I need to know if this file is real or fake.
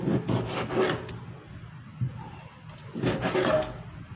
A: real